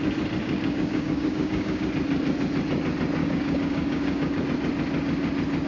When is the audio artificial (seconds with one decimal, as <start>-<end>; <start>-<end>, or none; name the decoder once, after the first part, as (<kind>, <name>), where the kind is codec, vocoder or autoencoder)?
0.4-1.9 (codec, DAC); 3.2-4.4